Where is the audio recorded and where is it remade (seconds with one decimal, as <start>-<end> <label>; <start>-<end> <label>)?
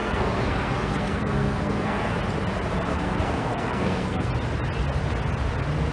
0.0-2.1 remade; 2.1-2.9 recorded; 2.9-4.3 remade; 4.3-5.9 recorded